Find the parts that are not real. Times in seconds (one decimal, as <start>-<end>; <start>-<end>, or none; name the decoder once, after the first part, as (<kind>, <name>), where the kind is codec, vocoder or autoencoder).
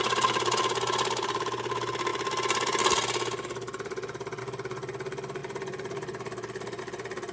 none